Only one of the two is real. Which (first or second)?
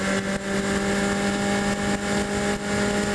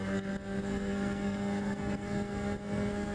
first